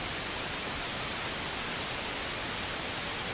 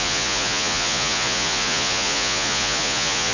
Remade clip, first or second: second